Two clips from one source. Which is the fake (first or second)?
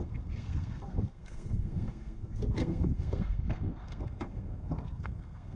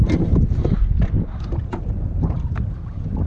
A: first